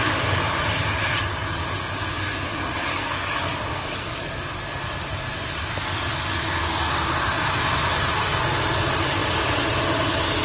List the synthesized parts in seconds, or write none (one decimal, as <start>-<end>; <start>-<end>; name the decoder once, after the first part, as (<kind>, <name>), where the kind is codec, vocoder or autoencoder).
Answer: 2.9-4.2 (codec, SNAC)